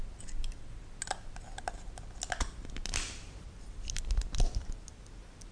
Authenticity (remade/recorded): recorded